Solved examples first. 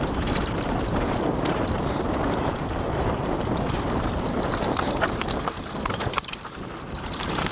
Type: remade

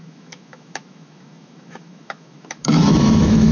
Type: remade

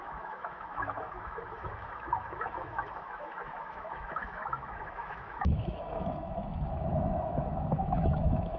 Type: remade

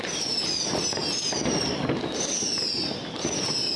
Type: recorded